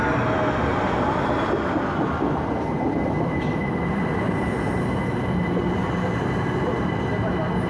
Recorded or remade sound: recorded